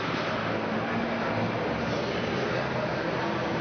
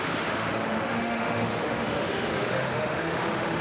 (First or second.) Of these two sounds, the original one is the first